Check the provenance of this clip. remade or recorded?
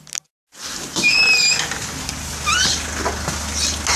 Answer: recorded